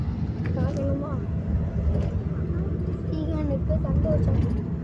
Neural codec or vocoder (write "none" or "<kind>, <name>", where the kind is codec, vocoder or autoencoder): none